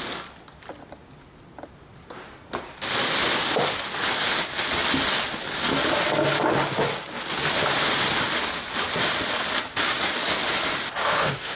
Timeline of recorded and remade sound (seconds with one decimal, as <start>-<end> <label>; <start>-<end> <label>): 0.0-11.0 recorded; 11.0-11.6 remade